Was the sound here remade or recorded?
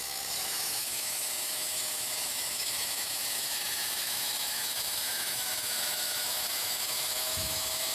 remade